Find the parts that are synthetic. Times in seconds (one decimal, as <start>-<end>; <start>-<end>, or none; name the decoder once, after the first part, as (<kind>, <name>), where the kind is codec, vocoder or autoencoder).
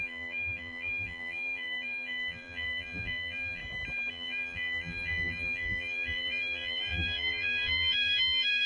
0.0-3.6 (vocoder, BigVGAN v2); 4.1-8.7